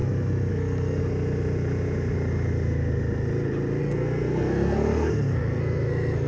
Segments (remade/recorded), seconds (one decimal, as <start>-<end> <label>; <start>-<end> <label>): 0.0-0.5 recorded; 0.5-1.0 remade; 1.0-3.8 recorded; 3.8-6.3 remade